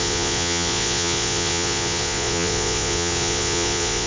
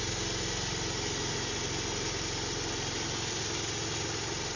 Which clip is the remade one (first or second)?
first